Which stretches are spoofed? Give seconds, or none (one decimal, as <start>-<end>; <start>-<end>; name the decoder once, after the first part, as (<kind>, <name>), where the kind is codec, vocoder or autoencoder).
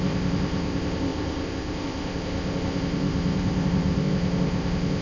0.0-5.0 (codec, ZipCodec)